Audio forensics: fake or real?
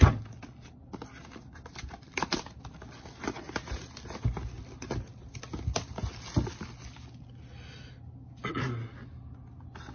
real